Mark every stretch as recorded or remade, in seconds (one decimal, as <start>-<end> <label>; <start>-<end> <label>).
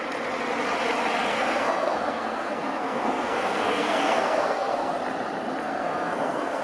0.0-1.3 recorded; 1.3-4.9 remade; 4.9-5.6 recorded; 5.6-6.6 remade